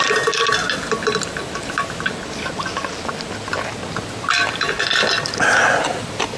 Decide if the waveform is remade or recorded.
recorded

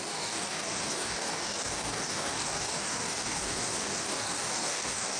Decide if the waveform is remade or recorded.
remade